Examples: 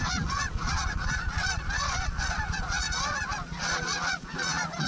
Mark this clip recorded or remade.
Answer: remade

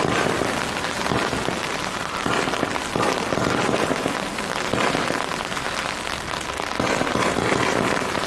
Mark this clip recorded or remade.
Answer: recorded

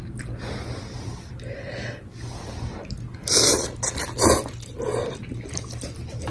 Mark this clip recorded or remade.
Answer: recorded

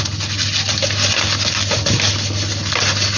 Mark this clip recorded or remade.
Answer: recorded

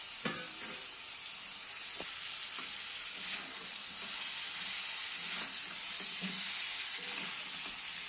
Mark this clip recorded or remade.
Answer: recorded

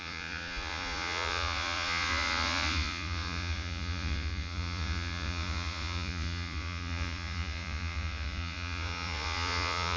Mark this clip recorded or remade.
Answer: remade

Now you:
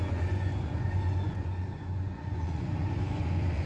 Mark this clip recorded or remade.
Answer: remade